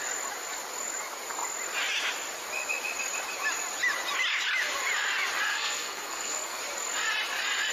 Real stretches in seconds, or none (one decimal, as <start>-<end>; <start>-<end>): 0.0-5.5; 6.6-7.7

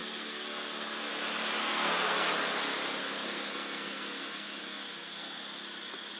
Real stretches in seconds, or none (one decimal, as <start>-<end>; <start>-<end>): 1.1-1.6; 2.3-3.0; 5.4-6.2

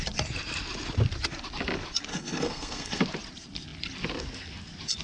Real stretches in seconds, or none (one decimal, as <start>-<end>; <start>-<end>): 0.0-2.1; 3.0-5.0

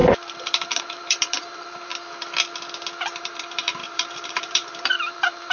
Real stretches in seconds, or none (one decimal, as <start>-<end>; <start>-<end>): 1.9-3.2